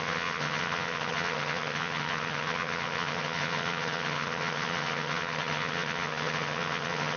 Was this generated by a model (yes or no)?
yes